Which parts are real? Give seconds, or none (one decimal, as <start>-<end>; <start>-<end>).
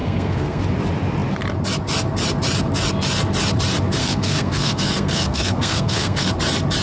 0.6-4.0; 6.3-6.8